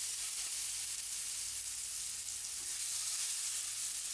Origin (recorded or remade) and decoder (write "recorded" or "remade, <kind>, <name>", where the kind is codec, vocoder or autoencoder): recorded